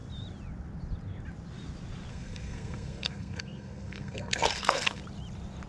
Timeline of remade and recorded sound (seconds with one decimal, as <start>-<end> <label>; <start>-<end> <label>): 0.0-2.1 recorded; 2.1-5.0 remade; 5.0-5.7 recorded